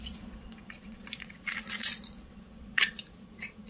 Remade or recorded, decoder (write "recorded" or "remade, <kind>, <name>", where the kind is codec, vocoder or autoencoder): remade, vocoder, Vocos